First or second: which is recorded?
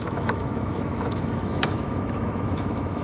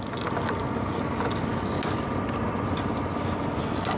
second